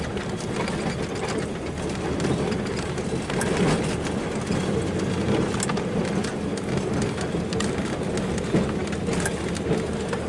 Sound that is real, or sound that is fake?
real